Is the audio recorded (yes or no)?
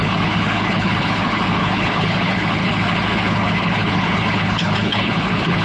no